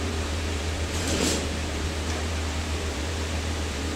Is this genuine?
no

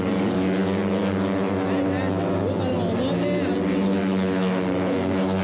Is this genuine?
yes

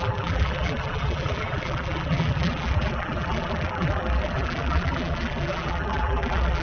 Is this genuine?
no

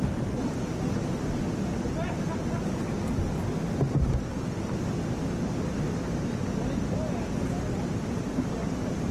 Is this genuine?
yes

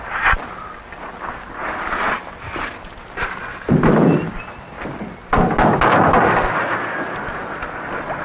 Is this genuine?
yes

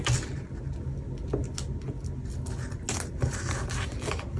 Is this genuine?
yes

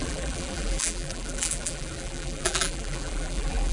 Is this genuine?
no